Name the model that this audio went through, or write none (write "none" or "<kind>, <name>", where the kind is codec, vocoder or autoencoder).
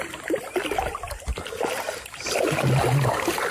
none